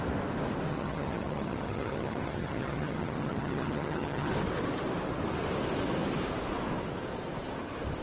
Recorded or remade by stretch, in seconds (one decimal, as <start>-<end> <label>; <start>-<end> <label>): 0.0-0.7 recorded; 0.7-4.3 remade; 4.3-8.0 recorded